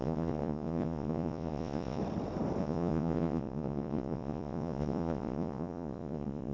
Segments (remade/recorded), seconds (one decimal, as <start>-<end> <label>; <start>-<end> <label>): 0.0-2.0 remade; 2.0-2.6 recorded; 2.6-6.5 remade